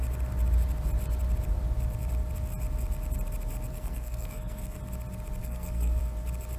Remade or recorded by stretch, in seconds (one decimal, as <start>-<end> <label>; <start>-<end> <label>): 0.0-3.7 recorded; 3.7-4.8 remade; 4.8-5.4 recorded; 5.4-6.0 remade; 6.0-6.6 recorded